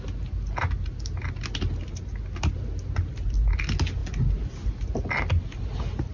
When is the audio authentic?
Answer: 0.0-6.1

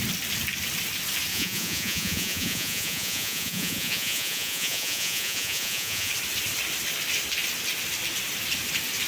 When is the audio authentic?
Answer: 0.0-1.3; 6.1-9.1

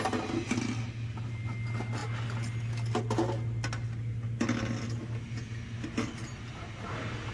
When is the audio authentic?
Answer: 0.0-7.3

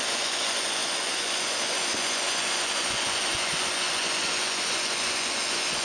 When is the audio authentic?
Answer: none

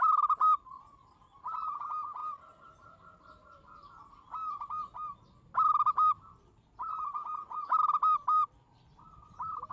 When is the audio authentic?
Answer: 0.0-9.7